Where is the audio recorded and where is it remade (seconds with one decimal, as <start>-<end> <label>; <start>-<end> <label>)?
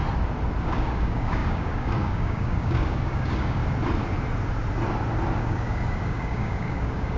0.0-0.6 recorded; 0.6-3.6 remade; 3.6-5.4 recorded; 5.4-7.2 remade